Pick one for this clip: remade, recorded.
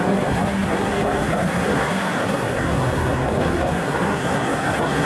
remade